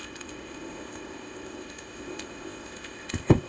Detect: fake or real fake